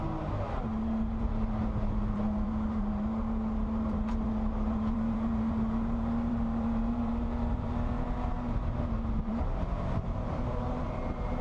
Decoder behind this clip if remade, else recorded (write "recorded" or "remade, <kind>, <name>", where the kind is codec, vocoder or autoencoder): remade, vocoder, BigVGAN v2